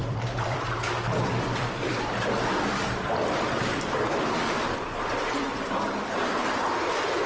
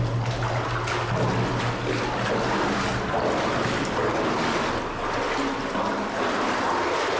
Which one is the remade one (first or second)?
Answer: first